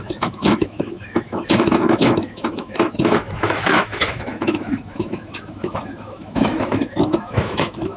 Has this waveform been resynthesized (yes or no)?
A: yes